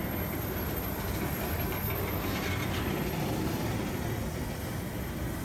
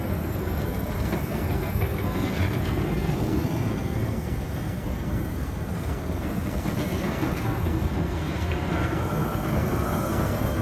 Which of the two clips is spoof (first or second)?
second